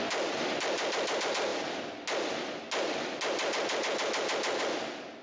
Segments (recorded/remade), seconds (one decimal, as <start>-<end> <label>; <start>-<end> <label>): 0.0-5.2 recorded